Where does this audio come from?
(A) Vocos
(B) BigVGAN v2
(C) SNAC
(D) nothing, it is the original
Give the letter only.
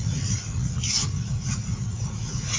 A